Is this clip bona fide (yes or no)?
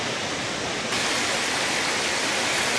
yes